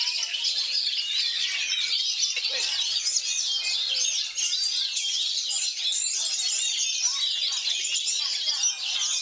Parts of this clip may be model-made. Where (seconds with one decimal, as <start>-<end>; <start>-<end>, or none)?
none